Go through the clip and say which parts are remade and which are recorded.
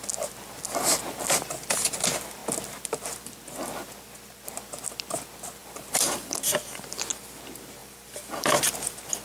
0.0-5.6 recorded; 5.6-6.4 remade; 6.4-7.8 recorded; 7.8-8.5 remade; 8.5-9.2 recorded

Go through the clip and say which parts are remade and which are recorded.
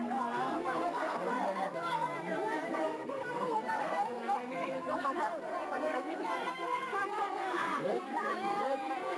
0.0-9.2 remade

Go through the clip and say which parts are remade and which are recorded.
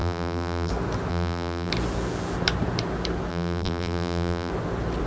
0.0-0.7 remade; 0.7-1.1 recorded; 1.1-1.7 remade; 1.7-3.3 recorded; 3.3-4.5 remade; 4.5-5.1 recorded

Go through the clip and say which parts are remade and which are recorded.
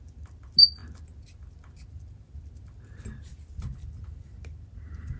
0.0-5.2 recorded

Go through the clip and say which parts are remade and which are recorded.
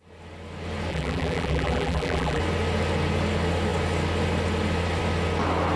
0.0-0.9 recorded; 0.9-2.4 remade; 2.4-5.8 recorded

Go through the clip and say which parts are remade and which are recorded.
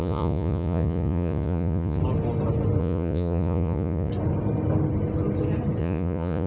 0.0-2.0 remade; 2.0-2.8 recorded; 2.8-4.1 remade; 4.1-5.8 recorded; 5.8-6.5 remade